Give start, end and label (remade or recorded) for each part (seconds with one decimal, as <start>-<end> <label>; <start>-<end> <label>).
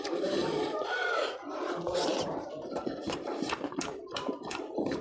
0.0-5.0 remade